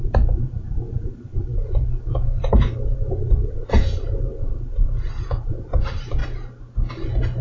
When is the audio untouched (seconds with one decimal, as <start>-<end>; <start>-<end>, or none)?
6.2-6.9